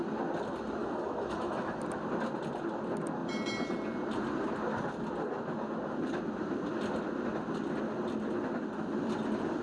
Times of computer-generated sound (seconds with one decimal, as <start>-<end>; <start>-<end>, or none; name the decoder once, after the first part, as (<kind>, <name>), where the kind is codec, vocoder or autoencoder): 0.8-1.8 (autoencoder, DAC-VAE)